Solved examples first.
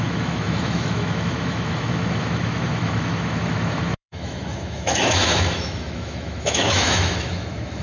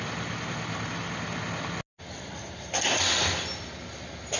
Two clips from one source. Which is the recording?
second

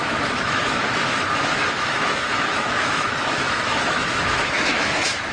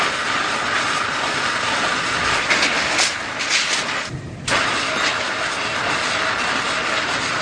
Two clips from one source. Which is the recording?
second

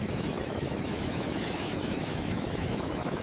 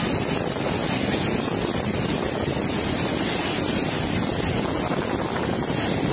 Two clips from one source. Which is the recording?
second